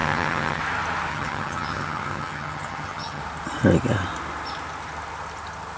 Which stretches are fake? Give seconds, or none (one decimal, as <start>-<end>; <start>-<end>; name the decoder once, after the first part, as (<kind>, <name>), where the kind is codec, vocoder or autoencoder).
0.0-0.6 (vocoder, HiFi-GAN); 1.1-3.2